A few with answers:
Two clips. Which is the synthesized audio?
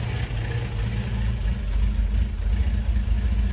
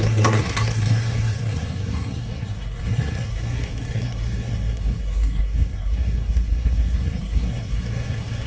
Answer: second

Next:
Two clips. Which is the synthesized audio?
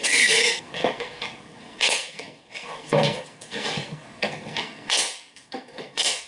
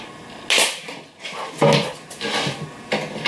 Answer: first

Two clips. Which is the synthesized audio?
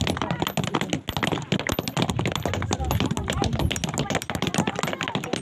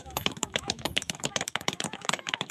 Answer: second